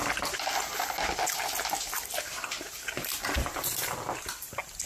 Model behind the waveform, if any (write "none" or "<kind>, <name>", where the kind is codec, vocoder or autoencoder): none